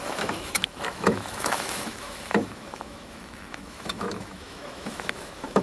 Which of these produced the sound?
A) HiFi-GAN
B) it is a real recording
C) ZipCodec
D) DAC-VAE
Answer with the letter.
D